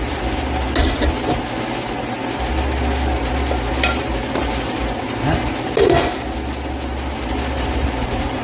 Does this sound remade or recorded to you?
recorded